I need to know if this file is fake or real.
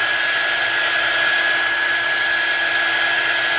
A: real